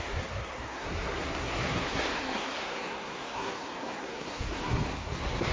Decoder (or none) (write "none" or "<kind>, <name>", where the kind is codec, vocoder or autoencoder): codec, SNAC